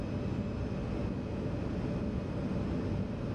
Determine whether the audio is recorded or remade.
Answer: recorded